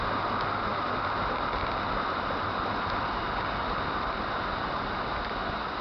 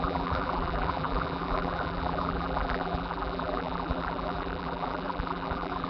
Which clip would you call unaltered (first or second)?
first